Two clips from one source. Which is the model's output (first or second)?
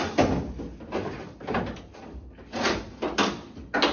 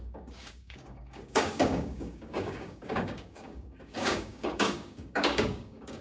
second